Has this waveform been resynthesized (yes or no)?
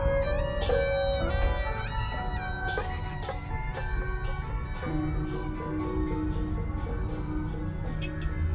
no